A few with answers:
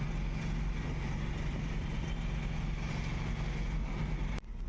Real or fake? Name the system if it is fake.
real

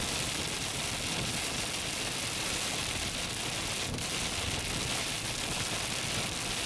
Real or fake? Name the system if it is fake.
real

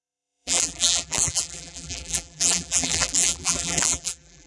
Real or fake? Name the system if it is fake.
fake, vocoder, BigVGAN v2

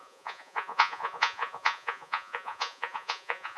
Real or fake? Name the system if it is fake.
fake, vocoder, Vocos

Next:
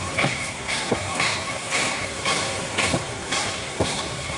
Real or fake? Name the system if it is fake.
fake, codec, SNAC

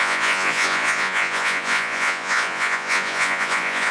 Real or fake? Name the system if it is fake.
fake, vocoder, Vocos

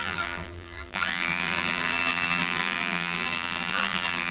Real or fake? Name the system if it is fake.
fake, vocoder, BigVGAN v2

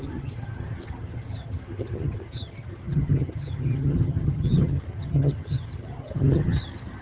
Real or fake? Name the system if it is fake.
fake, vocoder, HiFi-GAN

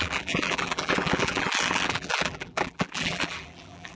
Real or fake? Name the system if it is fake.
fake, vocoder, BigVGAN v2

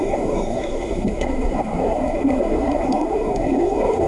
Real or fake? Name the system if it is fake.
fake, codec, SNAC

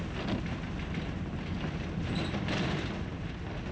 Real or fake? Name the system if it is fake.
real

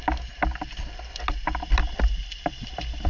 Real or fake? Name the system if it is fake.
real